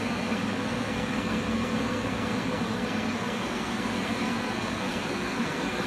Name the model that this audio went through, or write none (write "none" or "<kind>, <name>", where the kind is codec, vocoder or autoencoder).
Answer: codec, SNAC